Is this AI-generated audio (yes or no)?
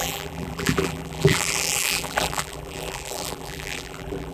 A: yes